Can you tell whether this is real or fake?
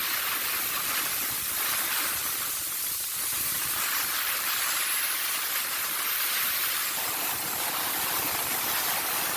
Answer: real